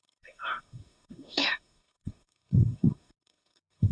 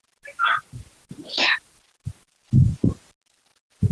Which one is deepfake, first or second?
first